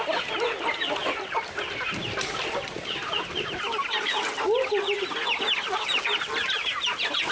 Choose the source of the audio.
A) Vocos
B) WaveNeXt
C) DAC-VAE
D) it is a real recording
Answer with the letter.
D